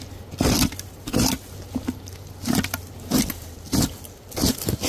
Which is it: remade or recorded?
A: recorded